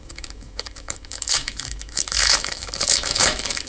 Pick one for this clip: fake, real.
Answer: fake